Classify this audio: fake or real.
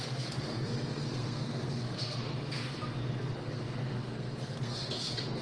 fake